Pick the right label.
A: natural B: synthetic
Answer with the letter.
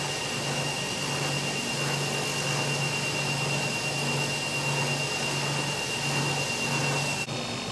A